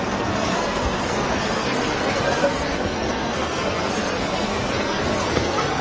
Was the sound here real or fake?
fake